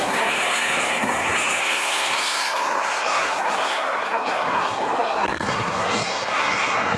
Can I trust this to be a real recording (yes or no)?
no